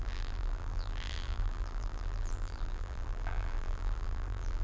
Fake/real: fake